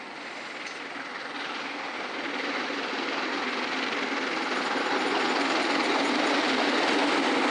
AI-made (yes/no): no